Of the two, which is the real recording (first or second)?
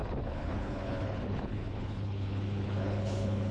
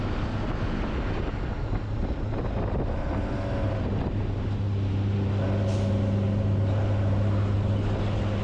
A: second